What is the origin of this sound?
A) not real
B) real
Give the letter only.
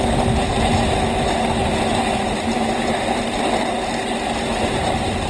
B